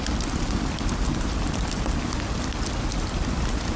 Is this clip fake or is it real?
real